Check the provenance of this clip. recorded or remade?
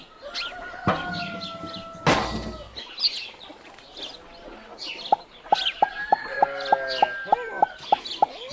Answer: recorded